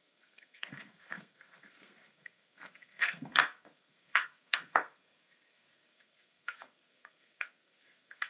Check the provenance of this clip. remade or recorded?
remade